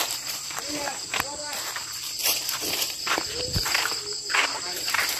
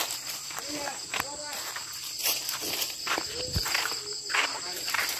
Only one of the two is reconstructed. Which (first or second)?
first